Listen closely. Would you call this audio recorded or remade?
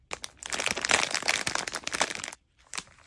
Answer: recorded